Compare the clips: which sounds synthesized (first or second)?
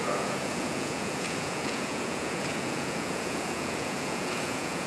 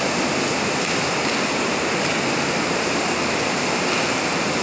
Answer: first